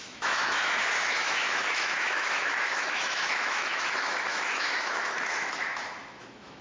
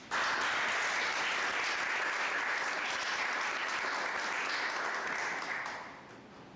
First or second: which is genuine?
second